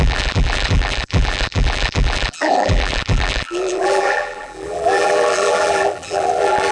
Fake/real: fake